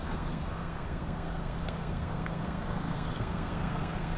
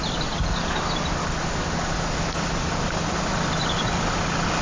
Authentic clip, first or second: second